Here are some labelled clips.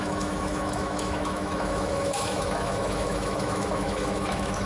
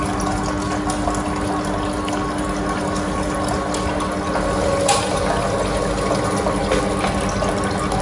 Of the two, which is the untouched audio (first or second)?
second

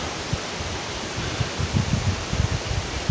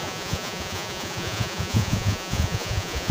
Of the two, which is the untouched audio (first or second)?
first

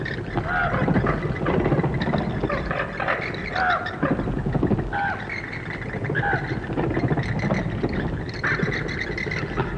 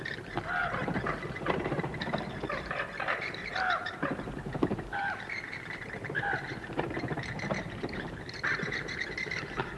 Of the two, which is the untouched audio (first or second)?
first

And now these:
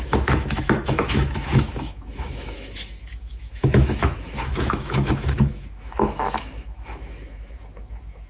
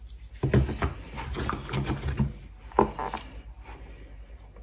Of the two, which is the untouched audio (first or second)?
second